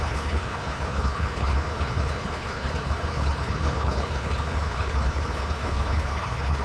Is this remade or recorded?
remade